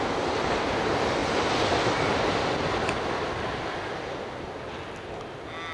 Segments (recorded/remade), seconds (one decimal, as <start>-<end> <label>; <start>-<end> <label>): 0.0-5.7 recorded